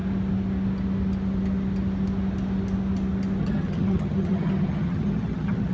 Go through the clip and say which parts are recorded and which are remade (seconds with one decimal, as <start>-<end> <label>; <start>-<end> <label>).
0.0-3.4 recorded; 3.4-5.7 remade